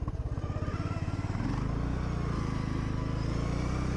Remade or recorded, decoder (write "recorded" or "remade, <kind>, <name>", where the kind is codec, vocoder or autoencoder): recorded